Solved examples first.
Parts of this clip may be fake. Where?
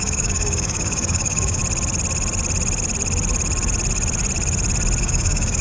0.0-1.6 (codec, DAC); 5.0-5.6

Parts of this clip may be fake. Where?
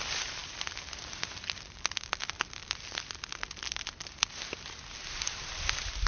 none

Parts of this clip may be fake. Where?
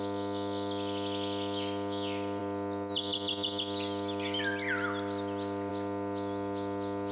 none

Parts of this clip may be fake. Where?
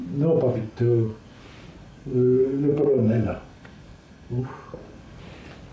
0.6-1.4 (codec, SNAC); 1.8-5.2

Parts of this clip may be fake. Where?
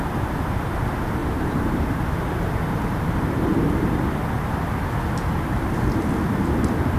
1.2-2.1 (vocoder, BigVGAN v2)